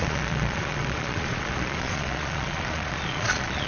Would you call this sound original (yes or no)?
no